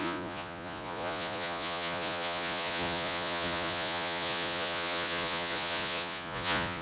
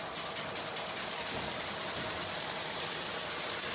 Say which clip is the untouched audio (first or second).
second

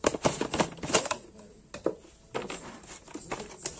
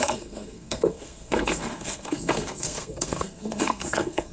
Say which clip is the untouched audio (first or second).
first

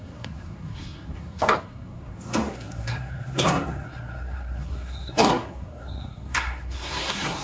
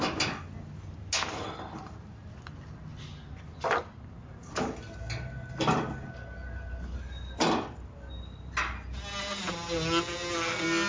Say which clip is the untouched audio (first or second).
second